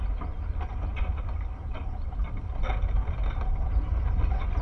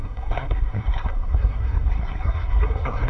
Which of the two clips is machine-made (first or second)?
second